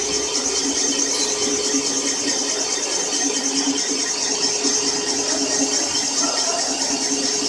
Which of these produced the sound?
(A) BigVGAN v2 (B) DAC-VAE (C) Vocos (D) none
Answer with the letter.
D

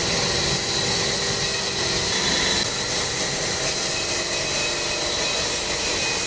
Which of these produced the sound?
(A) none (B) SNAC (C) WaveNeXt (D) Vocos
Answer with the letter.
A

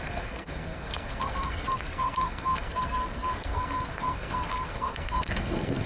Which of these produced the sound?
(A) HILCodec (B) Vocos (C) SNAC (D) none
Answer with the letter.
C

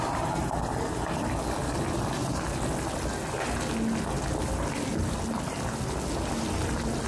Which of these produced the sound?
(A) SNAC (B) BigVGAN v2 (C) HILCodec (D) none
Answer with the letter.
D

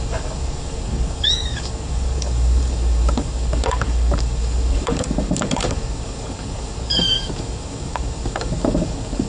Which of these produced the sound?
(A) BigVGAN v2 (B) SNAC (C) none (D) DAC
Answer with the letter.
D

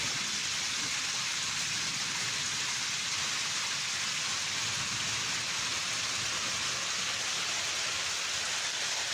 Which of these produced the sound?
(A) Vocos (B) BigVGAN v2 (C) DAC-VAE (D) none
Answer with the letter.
D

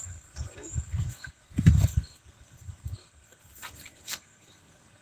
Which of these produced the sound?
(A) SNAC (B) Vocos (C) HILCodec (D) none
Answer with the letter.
A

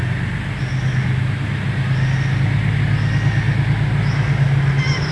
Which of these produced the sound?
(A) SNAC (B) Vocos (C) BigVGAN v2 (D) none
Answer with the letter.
D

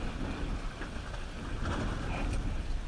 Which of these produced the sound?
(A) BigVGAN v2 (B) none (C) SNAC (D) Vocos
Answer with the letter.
B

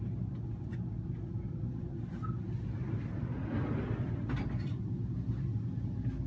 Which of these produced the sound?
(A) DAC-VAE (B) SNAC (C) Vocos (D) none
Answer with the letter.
D